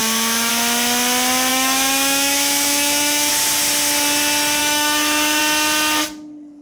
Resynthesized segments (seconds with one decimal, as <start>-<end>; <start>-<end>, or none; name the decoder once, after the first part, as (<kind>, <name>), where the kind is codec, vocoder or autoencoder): 0.0-0.5 (autoencoder, DAC-VAE); 1.5-3.3; 4.6-5.4